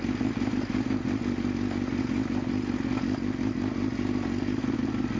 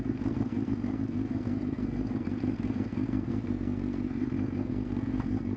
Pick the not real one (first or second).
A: second